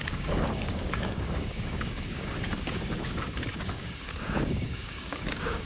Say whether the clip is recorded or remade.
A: remade